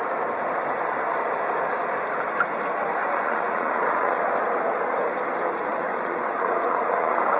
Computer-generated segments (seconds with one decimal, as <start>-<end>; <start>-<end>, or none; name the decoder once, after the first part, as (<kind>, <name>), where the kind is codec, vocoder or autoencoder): 3.0-4.2 (vocoder, Vocos); 5.7-7.4